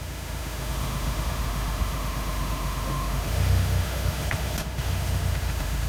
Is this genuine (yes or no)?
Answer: no